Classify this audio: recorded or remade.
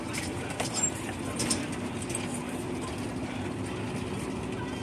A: recorded